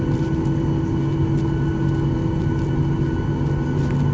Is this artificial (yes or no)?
no